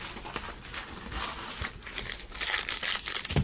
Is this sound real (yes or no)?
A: yes